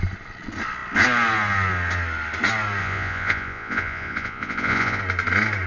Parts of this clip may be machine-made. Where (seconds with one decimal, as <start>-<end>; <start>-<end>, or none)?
2.8-5.0

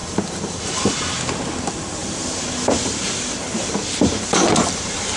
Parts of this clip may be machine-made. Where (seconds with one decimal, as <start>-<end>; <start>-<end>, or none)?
0.0-0.6; 2.0-5.2

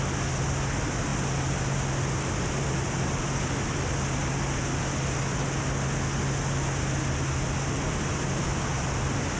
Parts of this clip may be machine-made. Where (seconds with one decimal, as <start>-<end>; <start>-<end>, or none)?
none

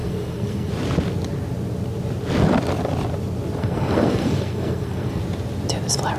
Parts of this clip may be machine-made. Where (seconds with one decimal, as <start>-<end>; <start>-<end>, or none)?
0.0-0.7; 3.6-5.2